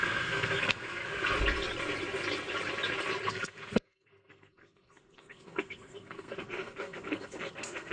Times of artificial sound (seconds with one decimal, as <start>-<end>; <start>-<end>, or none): 0.0-1.0; 3.3-7.9